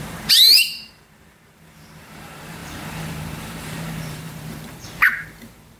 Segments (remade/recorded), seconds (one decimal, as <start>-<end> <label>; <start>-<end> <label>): 0.0-5.8 remade